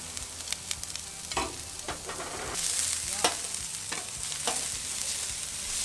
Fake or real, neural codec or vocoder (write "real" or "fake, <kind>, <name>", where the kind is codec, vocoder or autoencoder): real